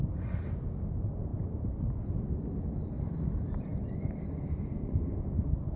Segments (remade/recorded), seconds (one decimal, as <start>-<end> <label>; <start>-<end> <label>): 0.0-1.3 recorded; 1.3-2.1 remade; 2.1-3.7 recorded; 3.7-5.1 remade; 5.1-5.8 recorded